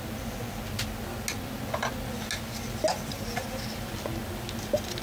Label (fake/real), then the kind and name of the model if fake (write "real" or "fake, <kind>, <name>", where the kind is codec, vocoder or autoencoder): real